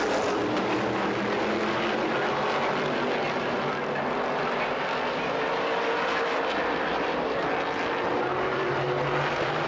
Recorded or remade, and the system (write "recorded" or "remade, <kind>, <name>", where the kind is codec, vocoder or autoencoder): recorded